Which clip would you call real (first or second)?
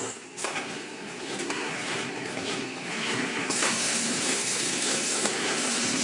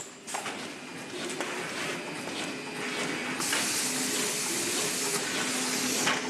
second